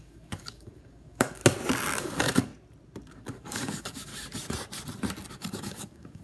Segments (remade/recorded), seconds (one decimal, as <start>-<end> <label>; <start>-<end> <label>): 0.0-1.4 remade; 1.4-2.0 recorded; 2.0-2.5 remade; 2.5-3.1 recorded; 3.1-4.1 remade; 4.1-5.3 recorded; 5.3-6.2 remade